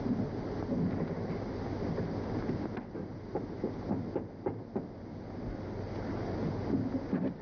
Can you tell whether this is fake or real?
real